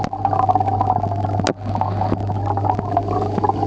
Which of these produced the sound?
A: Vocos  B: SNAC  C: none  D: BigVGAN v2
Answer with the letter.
C